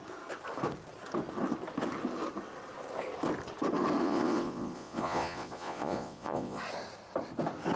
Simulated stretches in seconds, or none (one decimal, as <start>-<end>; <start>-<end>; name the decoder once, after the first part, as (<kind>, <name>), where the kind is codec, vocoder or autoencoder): 4.0-6.6 (vocoder, Vocos)